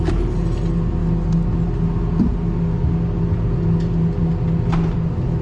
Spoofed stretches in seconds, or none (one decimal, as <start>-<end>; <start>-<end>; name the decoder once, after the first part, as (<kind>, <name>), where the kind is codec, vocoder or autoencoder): none